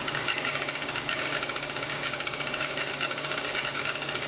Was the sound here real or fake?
fake